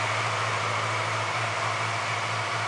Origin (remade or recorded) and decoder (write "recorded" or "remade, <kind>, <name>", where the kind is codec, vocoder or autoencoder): remade, vocoder, BigVGAN v2